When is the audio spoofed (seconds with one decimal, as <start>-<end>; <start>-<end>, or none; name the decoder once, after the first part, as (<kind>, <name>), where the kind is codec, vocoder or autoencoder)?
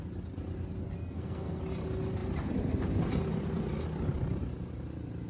1.0-1.6 (codec, SNAC)